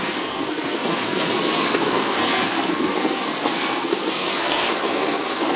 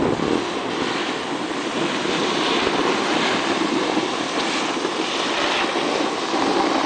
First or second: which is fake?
first